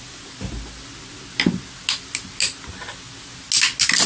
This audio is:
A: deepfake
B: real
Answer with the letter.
B